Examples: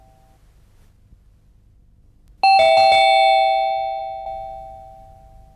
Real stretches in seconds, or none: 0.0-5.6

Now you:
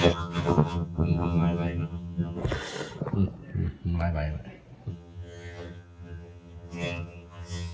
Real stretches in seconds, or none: 2.4-4.9

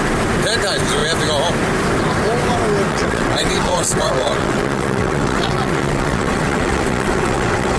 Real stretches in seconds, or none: 0.0-2.9

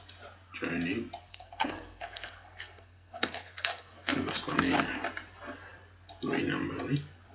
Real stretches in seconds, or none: 0.0-1.2; 4.3-7.3

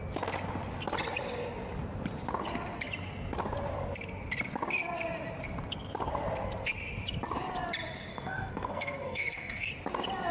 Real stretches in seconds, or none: 0.0-8.1; 9.7-10.3

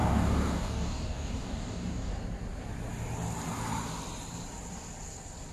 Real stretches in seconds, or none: 2.1-5.5

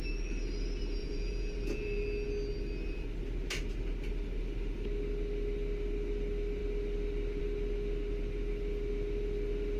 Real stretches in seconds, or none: 0.0-1.0; 2.0-9.8

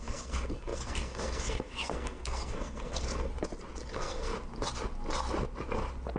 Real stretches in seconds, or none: 3.3-3.9; 4.3-6.2